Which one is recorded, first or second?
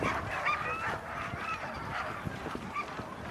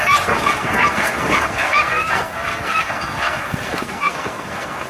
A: first